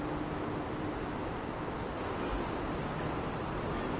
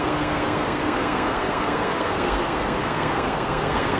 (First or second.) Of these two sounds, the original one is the first